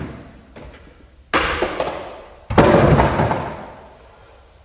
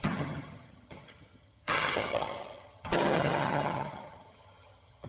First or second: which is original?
first